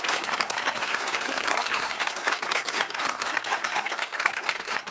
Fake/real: fake